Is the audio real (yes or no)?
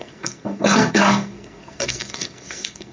no